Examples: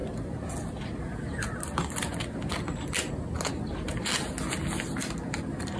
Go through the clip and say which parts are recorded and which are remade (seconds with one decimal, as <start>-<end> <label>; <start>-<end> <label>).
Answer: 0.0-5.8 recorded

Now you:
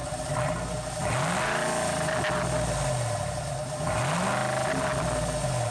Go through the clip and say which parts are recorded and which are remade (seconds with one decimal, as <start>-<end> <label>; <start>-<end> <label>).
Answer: 0.0-5.7 recorded

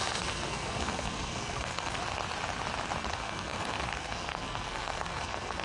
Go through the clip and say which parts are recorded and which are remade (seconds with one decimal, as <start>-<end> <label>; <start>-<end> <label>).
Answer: 0.0-2.0 remade; 2.0-3.1 recorded; 3.1-5.6 remade